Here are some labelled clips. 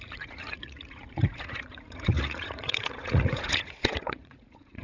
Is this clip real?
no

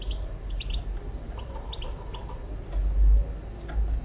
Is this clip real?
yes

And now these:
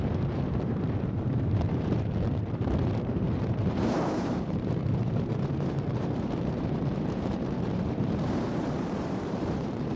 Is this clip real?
no